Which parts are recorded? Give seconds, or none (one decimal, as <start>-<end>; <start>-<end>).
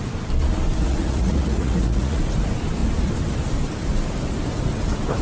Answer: 0.0-0.8; 2.2-5.2